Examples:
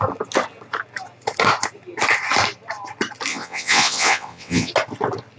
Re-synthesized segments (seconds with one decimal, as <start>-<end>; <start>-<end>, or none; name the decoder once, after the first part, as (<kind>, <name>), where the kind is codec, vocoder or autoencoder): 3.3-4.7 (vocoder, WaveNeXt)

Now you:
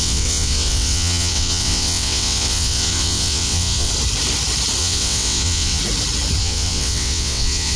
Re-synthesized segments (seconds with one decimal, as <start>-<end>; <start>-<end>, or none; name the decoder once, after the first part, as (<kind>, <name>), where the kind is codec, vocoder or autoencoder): 0.0-3.9 (vocoder, WaveNeXt); 4.8-5.8; 6.4-7.8

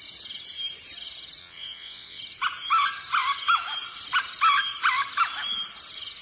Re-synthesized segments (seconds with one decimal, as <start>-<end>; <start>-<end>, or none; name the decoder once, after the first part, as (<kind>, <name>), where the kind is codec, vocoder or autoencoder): 1.4-2.2 (vocoder, WaveNeXt)

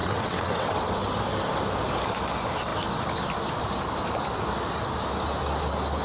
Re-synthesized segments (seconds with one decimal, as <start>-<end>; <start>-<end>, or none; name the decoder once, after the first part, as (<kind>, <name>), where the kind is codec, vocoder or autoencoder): 0.0-0.8 (vocoder, WaveNeXt)